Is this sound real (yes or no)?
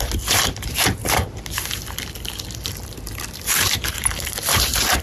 no